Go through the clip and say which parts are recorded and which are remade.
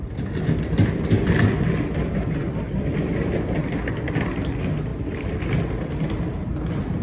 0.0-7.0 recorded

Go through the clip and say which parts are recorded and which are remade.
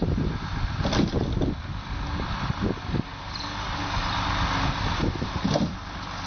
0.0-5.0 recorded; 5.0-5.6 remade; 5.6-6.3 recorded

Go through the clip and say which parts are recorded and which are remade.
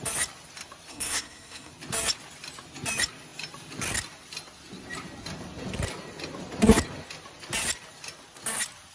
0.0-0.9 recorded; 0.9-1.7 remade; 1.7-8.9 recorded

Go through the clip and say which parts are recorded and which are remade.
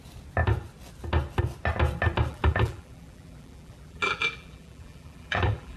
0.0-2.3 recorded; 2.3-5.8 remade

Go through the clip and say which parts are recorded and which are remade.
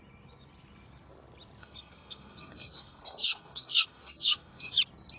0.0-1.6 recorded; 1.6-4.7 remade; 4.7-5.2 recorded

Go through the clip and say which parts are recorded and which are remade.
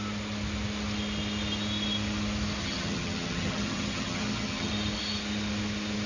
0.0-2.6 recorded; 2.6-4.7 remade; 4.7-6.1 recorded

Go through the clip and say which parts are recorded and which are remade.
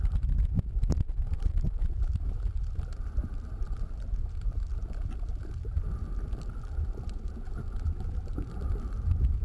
0.0-1.2 recorded; 1.2-5.8 remade; 5.8-9.4 recorded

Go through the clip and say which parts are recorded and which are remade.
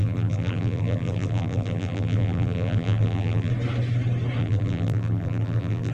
0.0-3.5 remade; 3.5-4.4 recorded; 4.4-5.9 remade